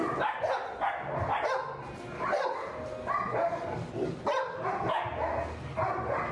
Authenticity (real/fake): real